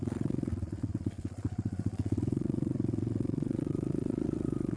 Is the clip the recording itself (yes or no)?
no